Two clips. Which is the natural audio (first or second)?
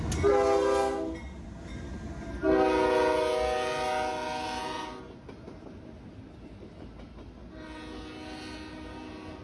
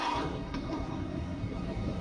first